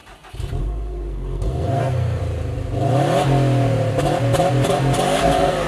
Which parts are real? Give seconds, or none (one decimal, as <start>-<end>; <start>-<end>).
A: 0.0-0.6; 2.2-5.2